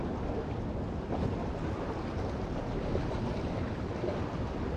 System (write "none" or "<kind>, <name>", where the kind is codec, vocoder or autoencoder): none